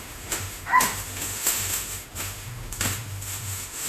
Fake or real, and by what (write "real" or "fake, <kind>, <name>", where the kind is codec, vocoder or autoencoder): fake, autoencoder, DAC-VAE